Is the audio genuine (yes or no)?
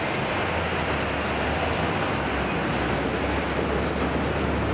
yes